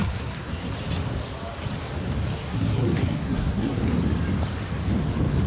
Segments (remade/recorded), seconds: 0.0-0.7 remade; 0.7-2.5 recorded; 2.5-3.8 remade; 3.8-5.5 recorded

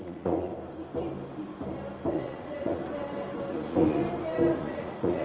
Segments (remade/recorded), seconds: 0.0-0.5 remade; 0.5-2.1 recorded; 2.1-2.8 remade; 2.8-3.5 recorded; 3.5-4.0 remade; 4.0-4.6 recorded; 4.6-5.2 remade

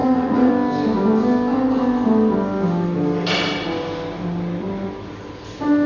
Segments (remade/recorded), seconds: 0.0-0.5 remade; 0.5-5.9 recorded

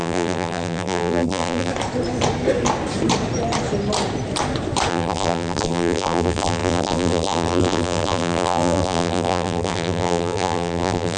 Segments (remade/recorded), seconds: 0.0-1.7 remade; 1.7-4.9 recorded; 4.9-11.2 remade

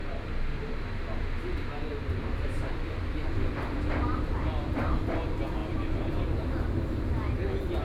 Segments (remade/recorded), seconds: 0.0-7.8 recorded

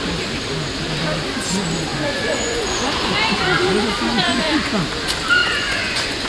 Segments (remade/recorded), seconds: 0.0-1.9 recorded; 1.9-3.4 remade; 3.4-4.2 recorded; 4.2-4.8 remade; 4.8-5.4 recorded; 5.4-6.3 remade

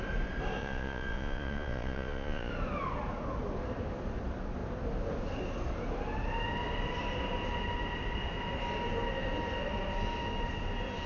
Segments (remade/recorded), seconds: 0.0-0.6 recorded; 0.6-2.5 remade; 2.5-11.1 recorded

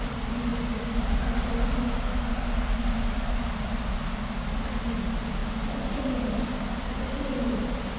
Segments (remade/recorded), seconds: 0.0-8.0 recorded